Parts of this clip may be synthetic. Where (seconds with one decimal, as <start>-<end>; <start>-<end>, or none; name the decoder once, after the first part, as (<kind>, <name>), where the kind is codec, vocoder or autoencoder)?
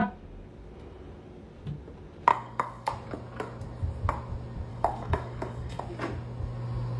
2.3-2.9 (codec, DAC); 4.7-5.8